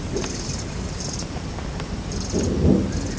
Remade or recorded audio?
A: recorded